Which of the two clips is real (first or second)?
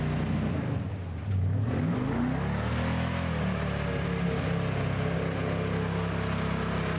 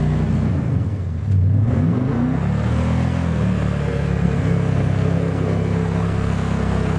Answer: first